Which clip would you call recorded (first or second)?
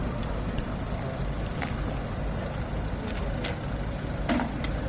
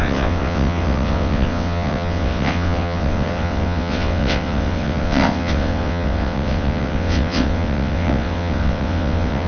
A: first